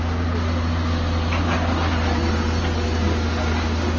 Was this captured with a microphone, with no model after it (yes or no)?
yes